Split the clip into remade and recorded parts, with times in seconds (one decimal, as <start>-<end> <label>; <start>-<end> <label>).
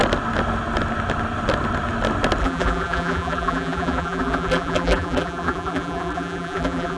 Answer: 0.0-2.4 recorded; 2.4-7.0 remade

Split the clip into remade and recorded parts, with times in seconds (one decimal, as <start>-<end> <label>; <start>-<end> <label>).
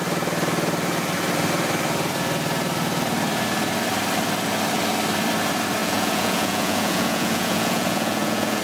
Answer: 0.0-5.8 recorded; 5.8-8.6 remade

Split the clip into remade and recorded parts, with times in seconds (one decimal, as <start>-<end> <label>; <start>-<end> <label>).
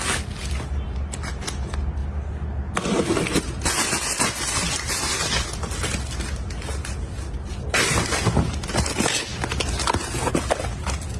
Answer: 0.0-11.2 recorded